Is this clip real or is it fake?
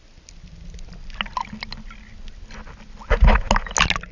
real